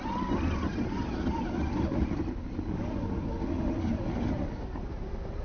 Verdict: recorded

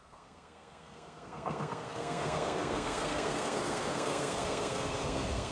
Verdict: remade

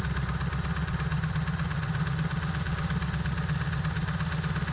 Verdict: recorded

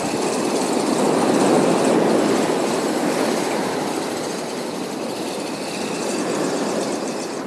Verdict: recorded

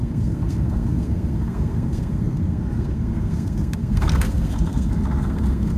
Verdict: remade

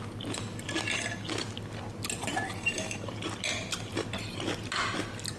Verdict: recorded